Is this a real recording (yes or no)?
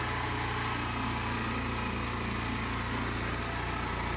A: yes